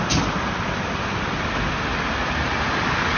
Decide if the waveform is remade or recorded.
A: recorded